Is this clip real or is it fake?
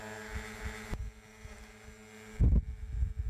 real